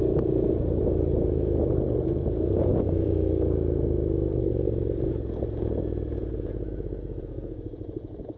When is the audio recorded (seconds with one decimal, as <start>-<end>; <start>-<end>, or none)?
none